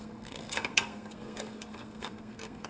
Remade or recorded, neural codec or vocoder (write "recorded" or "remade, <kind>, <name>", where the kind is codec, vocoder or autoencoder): remade, codec, SNAC